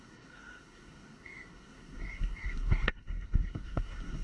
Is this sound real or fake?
fake